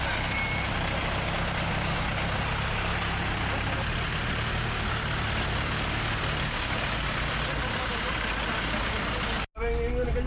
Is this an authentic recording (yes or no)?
yes